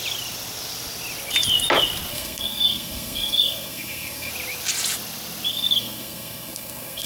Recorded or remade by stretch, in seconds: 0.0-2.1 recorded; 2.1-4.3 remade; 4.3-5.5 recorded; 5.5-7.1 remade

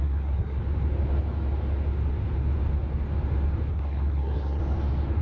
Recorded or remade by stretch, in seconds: 0.0-0.6 remade; 0.6-3.7 recorded; 3.7-4.6 remade; 4.6-5.2 recorded

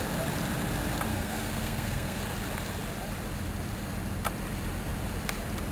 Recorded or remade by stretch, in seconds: 0.0-1.1 recorded; 1.1-2.2 remade; 2.2-5.7 recorded

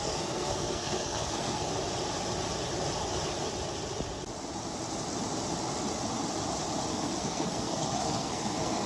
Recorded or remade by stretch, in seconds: 0.0-1.7 remade; 1.7-6.9 recorded; 6.9-8.9 remade

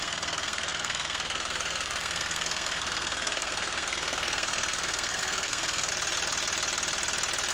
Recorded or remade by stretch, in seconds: 0.0-5.9 remade; 5.9-7.5 recorded

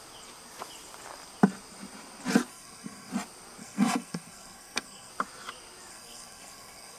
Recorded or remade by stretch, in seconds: 0.0-2.5 recorded; 2.5-3.1 remade; 3.1-3.6 recorded; 3.6-5.1 remade; 5.1-5.9 recorded; 5.9-7.0 remade

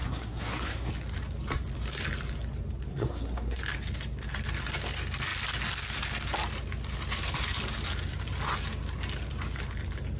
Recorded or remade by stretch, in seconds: 0.0-0.9 remade; 0.9-2.9 recorded; 2.9-3.6 remade; 3.6-10.2 recorded

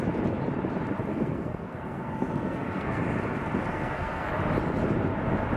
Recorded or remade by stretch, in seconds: 0.0-1.1 recorded; 1.1-3.0 remade; 3.0-3.7 recorded; 3.7-4.3 remade; 4.3-5.6 recorded